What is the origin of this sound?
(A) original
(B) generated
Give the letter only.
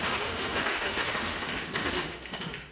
B